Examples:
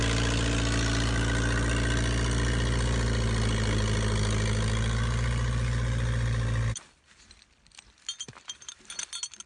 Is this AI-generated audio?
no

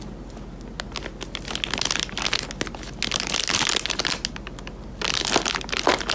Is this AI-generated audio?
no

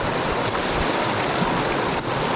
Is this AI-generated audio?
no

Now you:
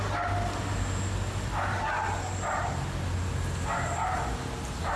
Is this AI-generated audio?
no